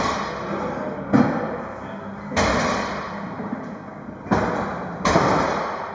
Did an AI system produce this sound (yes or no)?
no